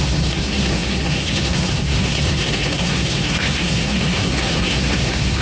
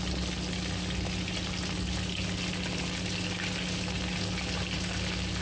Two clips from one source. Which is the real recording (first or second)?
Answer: second